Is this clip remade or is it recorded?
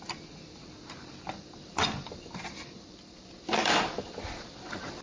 remade